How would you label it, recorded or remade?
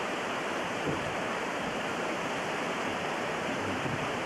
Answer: remade